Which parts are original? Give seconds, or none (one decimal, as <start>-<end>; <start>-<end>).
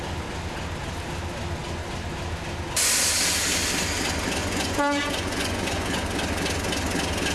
0.0-4.4; 6.0-7.3